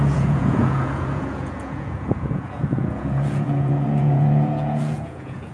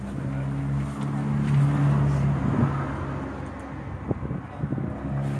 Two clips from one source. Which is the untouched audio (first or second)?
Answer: second